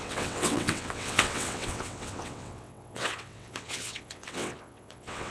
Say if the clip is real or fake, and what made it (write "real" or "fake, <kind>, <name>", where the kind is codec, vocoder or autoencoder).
fake, vocoder, WaveNeXt